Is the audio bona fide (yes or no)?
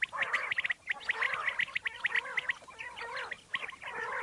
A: yes